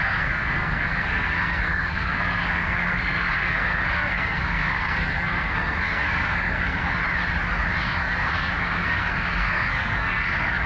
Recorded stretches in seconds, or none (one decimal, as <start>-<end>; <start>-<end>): 7.0-7.8